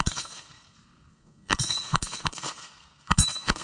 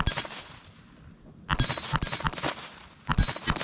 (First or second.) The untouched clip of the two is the second